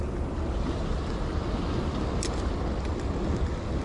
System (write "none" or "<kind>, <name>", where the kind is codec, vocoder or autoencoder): none